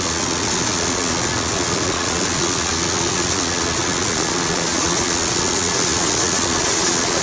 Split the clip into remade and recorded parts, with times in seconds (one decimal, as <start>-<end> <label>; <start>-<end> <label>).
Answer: 0.0-7.2 remade